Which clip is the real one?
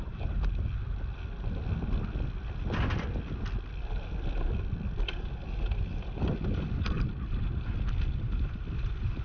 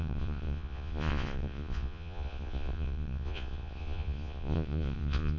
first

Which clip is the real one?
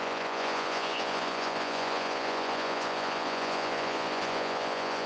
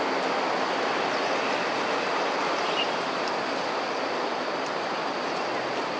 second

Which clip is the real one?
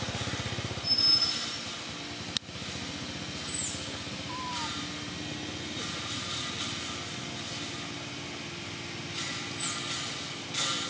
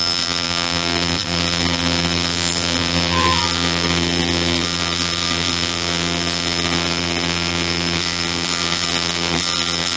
first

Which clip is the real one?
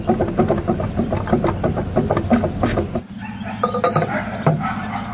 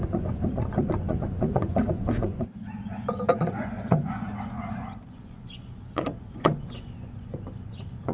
first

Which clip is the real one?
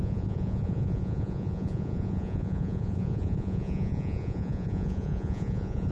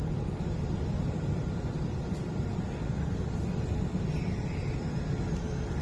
second